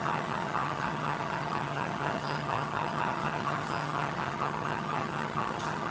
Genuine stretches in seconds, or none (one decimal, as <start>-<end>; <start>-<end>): none